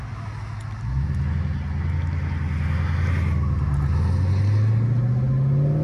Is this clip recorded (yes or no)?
yes